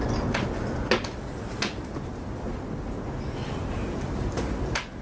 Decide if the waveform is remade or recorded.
recorded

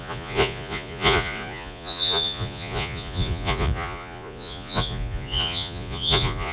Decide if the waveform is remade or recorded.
remade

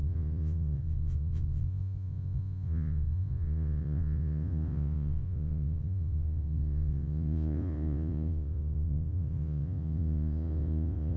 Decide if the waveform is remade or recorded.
remade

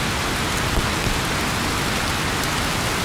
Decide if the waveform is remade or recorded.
recorded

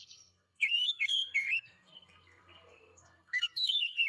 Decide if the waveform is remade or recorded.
remade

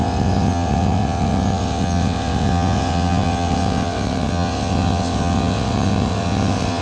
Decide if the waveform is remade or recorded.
remade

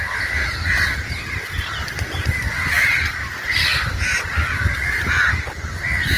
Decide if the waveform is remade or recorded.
recorded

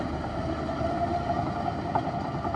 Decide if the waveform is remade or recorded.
recorded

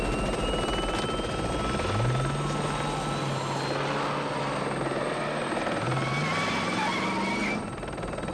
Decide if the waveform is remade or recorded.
recorded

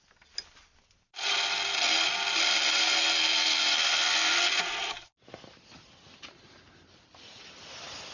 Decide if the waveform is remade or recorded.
recorded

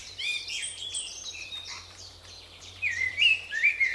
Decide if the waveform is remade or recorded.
remade